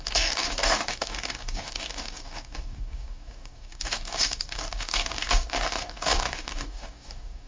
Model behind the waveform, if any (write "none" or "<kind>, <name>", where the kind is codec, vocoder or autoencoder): codec, DAC